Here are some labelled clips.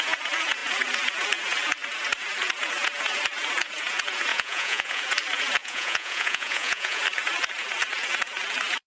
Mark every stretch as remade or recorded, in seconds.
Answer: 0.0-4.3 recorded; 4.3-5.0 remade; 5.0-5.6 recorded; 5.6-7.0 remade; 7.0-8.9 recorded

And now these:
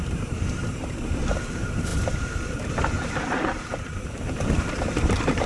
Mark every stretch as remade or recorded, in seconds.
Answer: 0.0-5.5 remade

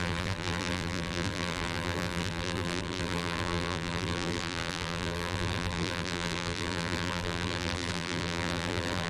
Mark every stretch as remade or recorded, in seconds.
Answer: 0.0-9.1 remade

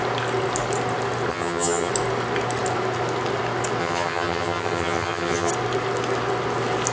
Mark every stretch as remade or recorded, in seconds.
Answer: 0.0-1.3 recorded; 1.3-1.9 remade; 1.9-3.8 recorded; 3.8-5.5 remade; 5.5-6.9 recorded

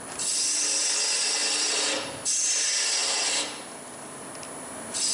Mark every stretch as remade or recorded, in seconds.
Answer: 0.0-3.0 recorded; 3.0-3.6 remade; 3.6-5.1 recorded

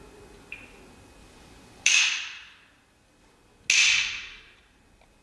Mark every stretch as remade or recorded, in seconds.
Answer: 0.0-1.2 recorded; 1.2-2.0 remade; 2.0-4.1 recorded; 4.1-4.8 remade; 4.8-5.2 recorded

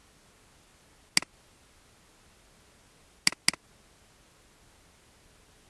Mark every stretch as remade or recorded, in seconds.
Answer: 0.0-5.7 recorded

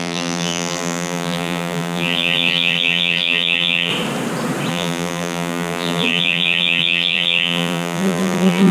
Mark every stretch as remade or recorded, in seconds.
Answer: 0.0-3.9 remade; 3.9-4.7 recorded; 4.7-8.7 remade